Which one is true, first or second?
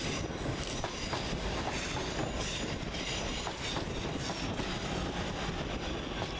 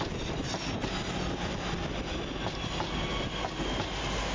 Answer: second